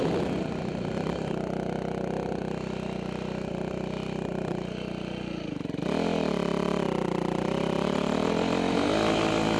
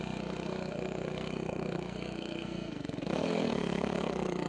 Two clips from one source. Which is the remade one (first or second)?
second